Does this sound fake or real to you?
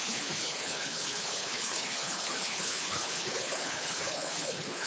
fake